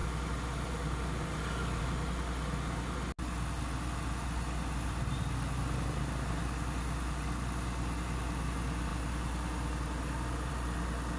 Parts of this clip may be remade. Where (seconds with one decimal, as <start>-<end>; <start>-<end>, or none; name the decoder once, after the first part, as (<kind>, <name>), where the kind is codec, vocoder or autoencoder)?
none